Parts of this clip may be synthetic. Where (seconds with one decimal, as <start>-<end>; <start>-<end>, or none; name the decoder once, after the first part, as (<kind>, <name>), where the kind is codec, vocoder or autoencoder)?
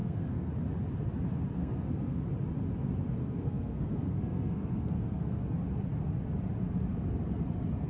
0.0-0.5 (codec, SNAC); 1.6-2.2; 3.2-5.4